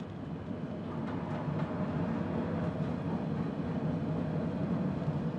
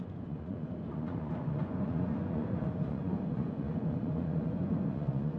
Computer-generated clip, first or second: second